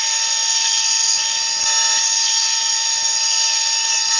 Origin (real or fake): real